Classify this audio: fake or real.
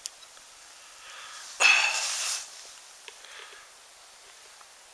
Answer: real